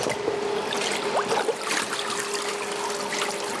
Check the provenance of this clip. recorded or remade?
recorded